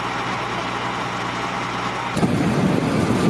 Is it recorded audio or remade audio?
recorded